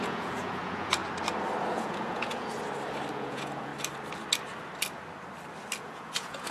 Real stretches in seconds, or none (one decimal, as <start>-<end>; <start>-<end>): 1.0-1.7; 2.5-3.1; 3.7-5.8